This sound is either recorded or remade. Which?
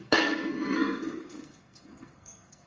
remade